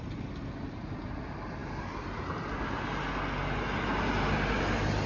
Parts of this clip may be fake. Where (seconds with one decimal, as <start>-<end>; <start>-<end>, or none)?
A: none